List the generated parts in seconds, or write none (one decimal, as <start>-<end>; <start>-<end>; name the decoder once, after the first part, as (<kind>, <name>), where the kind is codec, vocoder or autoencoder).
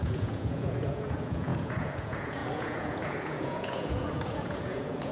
0.0-5.1 (vocoder, Vocos)